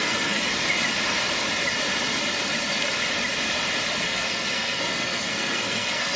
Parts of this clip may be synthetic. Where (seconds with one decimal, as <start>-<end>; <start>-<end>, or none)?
0.0-0.5; 4.0-6.2